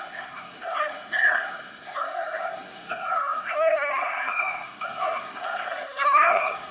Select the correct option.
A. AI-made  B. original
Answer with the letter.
A